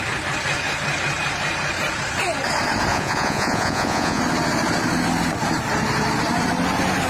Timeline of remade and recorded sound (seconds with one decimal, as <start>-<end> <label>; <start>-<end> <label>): 0.0-2.9 recorded; 2.9-4.2 remade; 4.2-7.1 recorded